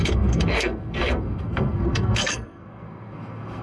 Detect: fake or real fake